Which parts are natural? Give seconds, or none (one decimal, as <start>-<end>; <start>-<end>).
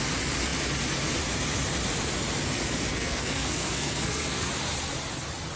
0.0-2.9; 4.5-5.6